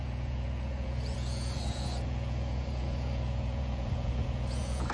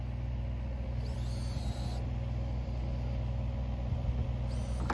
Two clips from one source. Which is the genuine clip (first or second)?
second